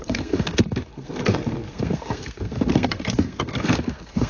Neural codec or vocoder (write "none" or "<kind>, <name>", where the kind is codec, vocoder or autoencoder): codec, SNAC